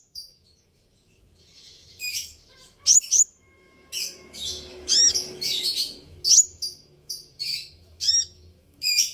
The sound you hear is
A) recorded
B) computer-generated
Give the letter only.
B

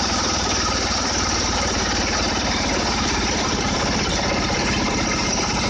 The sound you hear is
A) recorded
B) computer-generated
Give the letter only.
B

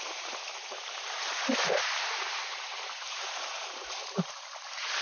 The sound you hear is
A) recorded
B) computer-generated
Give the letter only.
B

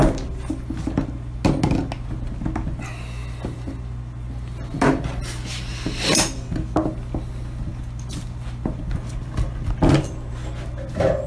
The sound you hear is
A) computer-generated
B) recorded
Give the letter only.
B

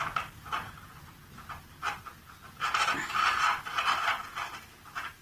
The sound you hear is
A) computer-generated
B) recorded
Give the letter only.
B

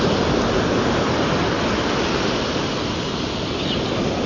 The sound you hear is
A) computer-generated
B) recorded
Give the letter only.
B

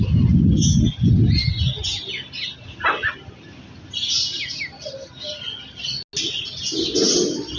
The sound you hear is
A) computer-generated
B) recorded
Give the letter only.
B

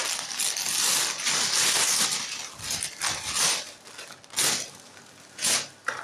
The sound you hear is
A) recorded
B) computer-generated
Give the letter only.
A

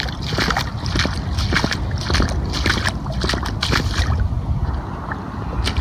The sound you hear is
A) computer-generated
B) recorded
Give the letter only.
B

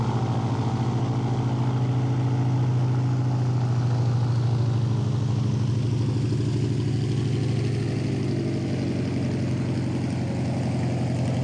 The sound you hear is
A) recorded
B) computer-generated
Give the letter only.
A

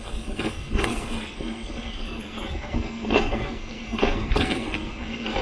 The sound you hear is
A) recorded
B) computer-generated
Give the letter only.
B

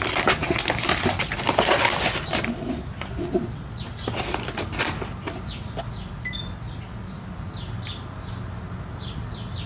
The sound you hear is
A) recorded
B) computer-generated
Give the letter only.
A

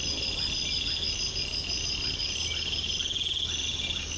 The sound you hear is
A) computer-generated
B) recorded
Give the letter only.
B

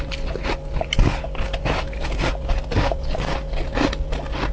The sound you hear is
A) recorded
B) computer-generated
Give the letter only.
A